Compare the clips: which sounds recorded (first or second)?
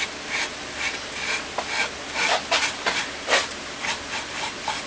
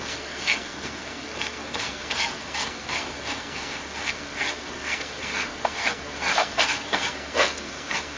first